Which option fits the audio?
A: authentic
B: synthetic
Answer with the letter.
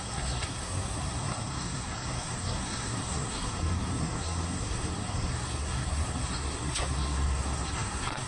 B